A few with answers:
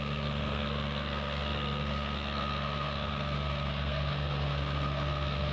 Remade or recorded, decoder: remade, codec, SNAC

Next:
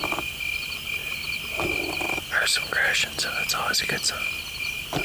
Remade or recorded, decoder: recorded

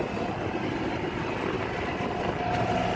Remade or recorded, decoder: recorded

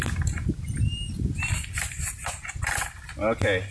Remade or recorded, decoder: recorded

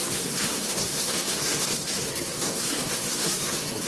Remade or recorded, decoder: remade, codec, SNAC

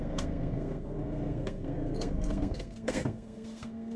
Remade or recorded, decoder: remade, codec, SNAC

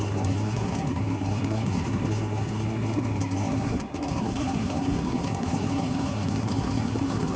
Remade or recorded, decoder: remade, codec, SNAC